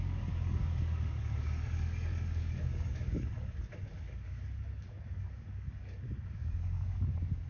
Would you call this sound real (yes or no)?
no